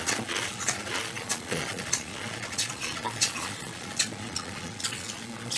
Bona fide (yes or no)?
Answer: no